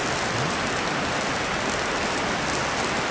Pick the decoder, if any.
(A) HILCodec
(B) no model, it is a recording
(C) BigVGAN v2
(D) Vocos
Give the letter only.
B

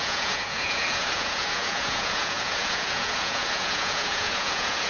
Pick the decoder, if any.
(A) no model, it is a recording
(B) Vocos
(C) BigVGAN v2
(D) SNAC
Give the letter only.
B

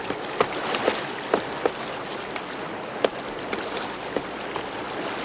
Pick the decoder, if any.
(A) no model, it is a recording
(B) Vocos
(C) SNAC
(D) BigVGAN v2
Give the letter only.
A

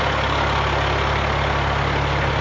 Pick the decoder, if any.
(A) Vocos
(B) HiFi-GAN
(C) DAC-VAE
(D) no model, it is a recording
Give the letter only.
D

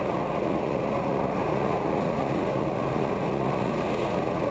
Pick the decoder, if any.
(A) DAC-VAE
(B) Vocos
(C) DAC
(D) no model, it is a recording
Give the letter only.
B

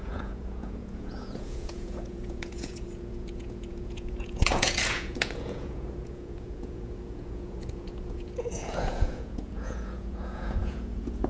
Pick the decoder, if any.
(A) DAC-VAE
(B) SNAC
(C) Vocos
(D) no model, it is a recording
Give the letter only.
C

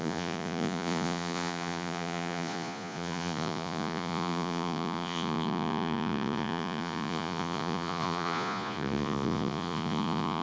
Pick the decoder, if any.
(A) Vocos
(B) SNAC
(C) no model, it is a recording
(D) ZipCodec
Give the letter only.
A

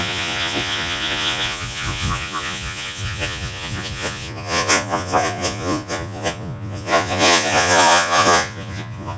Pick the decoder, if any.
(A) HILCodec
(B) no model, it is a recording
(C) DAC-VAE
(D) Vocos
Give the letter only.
D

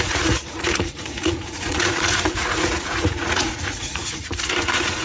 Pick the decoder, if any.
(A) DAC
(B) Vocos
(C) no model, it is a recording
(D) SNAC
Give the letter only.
B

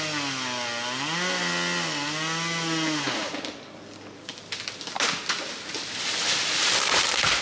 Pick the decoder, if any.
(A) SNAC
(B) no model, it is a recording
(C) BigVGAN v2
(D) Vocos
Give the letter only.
B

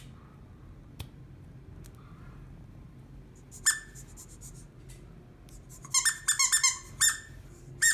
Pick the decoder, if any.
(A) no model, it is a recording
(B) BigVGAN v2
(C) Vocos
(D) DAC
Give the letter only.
A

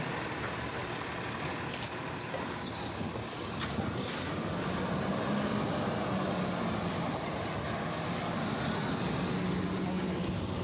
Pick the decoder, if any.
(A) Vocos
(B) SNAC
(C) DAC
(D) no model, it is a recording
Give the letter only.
D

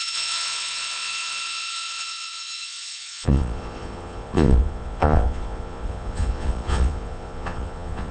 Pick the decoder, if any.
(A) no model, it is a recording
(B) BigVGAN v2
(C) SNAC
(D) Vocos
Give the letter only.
D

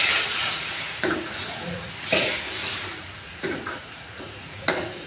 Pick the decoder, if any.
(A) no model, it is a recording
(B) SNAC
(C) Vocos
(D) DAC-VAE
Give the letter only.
C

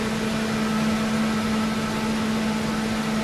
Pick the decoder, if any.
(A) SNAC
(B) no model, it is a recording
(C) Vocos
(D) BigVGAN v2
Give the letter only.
B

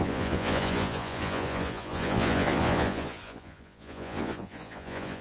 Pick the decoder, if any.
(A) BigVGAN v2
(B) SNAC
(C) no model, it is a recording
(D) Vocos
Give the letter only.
D